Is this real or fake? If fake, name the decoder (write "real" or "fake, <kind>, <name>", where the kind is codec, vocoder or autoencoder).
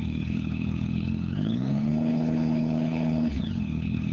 fake, codec, HILCodec